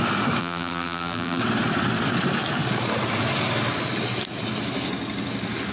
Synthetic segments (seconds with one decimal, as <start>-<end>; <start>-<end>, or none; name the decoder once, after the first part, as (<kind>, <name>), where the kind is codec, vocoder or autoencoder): 0.4-1.4 (vocoder, BigVGAN v2)